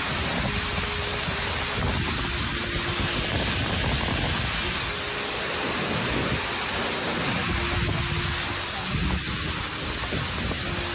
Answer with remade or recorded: recorded